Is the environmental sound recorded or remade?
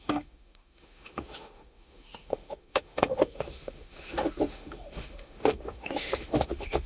remade